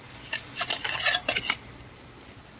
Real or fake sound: fake